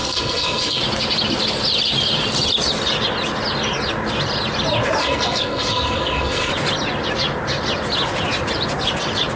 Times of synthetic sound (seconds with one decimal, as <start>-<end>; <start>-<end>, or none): 0.0-0.8; 5.0-6.5